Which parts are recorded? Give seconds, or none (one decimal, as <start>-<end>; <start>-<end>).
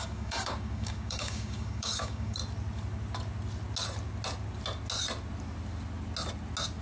2.4-6.8